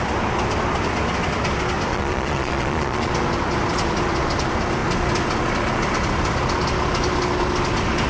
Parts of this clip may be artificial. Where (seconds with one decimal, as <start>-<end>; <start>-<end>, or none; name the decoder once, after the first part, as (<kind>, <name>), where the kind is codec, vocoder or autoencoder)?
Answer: 1.9-3.1 (vocoder, Vocos)